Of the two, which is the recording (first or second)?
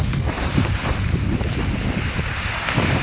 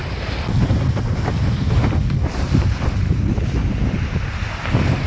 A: second